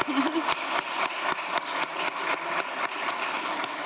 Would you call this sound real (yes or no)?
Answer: yes